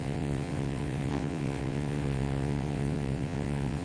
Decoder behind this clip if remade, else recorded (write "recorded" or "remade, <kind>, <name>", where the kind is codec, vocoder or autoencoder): remade, vocoder, WaveNeXt